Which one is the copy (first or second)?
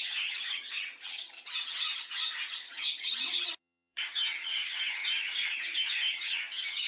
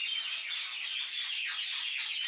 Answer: first